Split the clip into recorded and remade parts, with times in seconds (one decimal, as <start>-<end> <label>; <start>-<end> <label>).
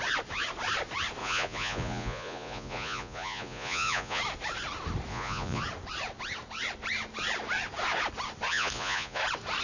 0.0-1.2 recorded; 1.2-4.2 remade; 4.2-5.1 recorded; 5.1-5.6 remade; 5.6-8.5 recorded; 8.5-9.2 remade; 9.2-9.6 recorded